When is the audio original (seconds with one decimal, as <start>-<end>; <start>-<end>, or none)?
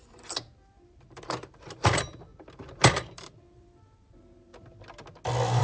2.3-2.9; 4.5-5.6